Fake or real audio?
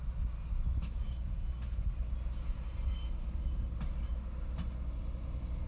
real